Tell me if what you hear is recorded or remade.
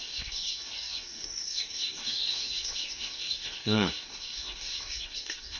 remade